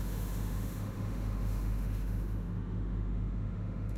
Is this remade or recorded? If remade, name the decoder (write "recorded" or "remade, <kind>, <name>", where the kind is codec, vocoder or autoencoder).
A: remade, autoencoder, DAC-VAE